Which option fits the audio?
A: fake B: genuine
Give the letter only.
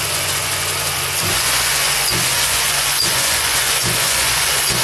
A